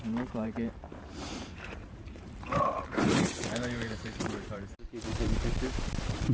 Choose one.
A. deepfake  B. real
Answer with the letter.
A